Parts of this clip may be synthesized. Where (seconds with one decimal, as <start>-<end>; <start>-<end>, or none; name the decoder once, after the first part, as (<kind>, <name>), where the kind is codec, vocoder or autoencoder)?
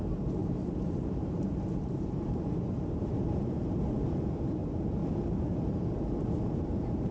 0.0-5.0 (vocoder, BigVGAN v2); 6.5-7.1